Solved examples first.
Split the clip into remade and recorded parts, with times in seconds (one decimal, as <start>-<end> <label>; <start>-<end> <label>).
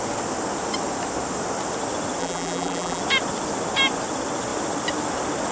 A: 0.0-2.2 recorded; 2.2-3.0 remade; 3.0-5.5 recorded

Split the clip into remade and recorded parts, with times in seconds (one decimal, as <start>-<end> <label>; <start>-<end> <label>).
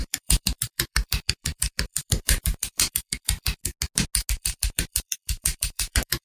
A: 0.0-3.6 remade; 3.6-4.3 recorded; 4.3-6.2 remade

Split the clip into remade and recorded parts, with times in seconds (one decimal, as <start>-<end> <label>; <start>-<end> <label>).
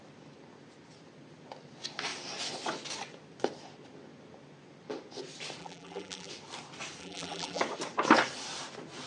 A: 0.0-5.6 recorded; 5.6-6.3 remade; 6.3-7.0 recorded; 7.0-7.6 remade; 7.6-9.1 recorded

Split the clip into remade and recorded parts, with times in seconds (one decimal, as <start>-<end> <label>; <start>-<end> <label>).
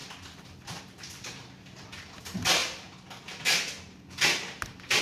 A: 0.0-5.0 recorded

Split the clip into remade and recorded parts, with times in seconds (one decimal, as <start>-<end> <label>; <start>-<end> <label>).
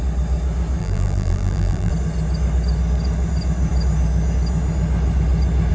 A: 0.0-0.8 recorded; 0.8-1.9 remade; 1.9-5.7 recorded